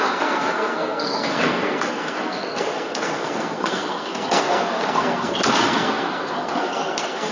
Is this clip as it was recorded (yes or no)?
no